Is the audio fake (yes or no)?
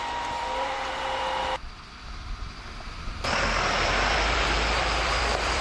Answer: yes